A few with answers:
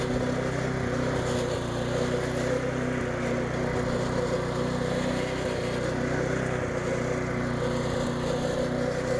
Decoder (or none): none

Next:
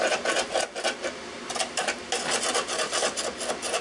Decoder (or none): none